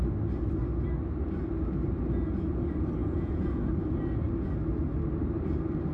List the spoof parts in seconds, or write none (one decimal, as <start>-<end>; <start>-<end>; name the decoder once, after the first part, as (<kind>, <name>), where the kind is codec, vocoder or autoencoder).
3.0-3.7 (vocoder, Vocos)